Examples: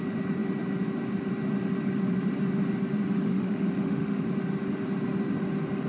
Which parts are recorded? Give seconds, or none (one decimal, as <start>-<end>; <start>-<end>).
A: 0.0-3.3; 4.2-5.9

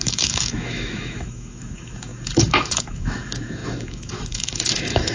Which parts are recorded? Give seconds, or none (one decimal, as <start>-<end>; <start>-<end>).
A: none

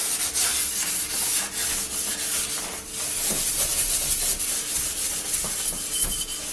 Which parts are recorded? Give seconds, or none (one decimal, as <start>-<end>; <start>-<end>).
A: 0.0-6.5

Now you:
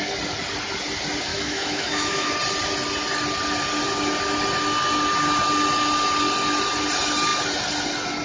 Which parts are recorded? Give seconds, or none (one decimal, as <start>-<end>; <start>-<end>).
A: 0.0-1.3; 2.3-8.2